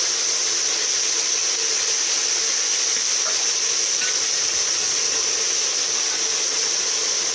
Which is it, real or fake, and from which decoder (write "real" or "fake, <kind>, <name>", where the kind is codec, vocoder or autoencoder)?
real